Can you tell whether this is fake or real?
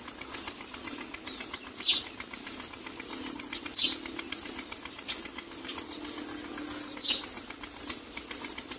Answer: real